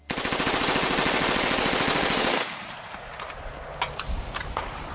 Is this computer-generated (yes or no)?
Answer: no